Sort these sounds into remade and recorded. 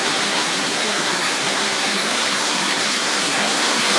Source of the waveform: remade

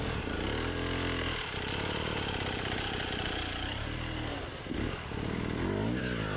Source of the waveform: recorded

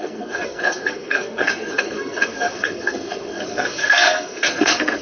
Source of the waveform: remade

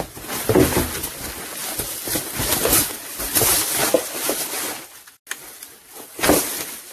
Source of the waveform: recorded